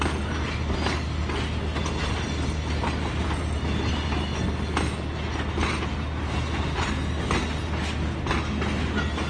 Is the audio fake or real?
real